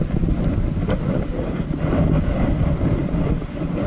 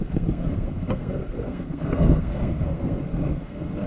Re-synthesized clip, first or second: second